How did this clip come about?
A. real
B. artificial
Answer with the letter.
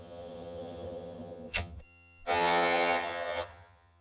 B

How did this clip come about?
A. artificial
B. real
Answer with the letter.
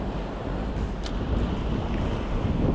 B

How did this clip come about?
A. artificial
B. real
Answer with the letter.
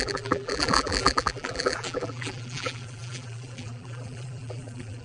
A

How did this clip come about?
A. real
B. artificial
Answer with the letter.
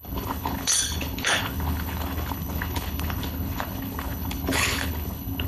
B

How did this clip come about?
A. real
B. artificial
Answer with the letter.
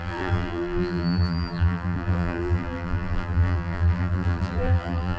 B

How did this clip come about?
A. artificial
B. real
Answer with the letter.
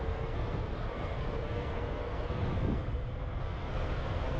A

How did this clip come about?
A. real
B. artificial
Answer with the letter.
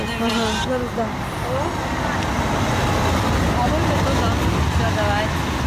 A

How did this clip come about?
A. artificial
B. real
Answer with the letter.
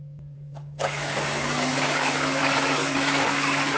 A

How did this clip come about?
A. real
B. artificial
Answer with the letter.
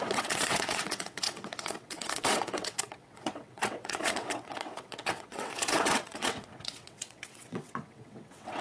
B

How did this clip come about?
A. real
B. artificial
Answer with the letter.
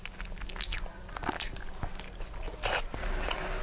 A